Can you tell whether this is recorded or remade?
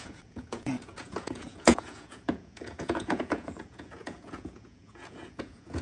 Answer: remade